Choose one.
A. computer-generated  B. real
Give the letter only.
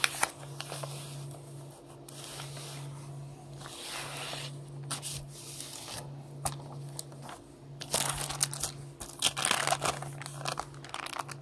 B